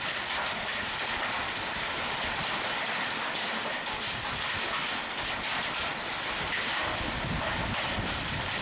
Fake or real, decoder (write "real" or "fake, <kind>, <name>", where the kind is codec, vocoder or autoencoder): real